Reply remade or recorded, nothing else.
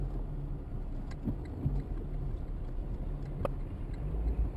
recorded